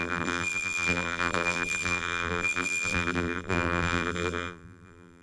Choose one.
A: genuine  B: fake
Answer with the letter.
B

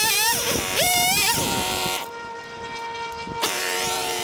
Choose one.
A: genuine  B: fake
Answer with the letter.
B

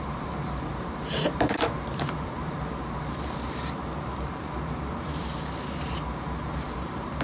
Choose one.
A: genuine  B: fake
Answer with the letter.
B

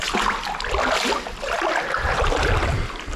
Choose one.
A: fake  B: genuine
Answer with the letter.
B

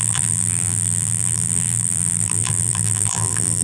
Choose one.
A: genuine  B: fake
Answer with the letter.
B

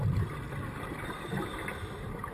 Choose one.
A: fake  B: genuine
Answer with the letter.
A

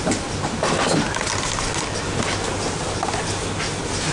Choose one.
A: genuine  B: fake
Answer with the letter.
A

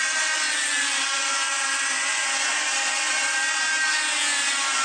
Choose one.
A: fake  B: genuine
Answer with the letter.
B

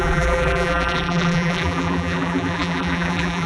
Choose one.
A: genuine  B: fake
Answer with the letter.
B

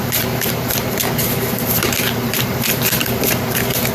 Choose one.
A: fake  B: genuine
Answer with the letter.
A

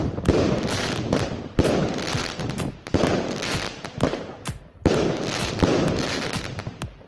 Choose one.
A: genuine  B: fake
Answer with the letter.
A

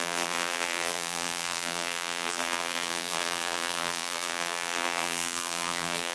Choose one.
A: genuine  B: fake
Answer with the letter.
B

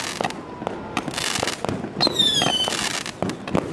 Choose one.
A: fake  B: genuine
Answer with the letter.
B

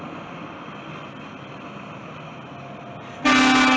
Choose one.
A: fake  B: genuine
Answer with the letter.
B